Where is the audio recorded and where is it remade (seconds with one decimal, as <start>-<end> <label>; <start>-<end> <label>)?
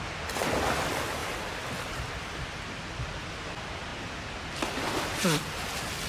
0.0-1.2 recorded; 1.2-3.3 remade; 3.3-6.1 recorded